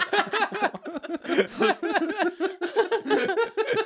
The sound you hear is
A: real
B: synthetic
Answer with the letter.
A